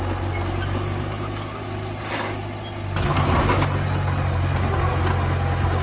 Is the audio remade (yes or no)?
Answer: no